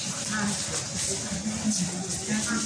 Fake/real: real